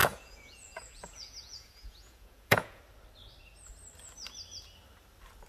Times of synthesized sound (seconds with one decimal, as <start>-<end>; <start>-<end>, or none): 0.0-2.8